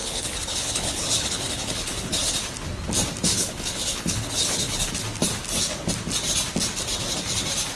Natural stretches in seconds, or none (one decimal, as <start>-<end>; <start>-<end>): 2.1-3.3; 4.9-7.8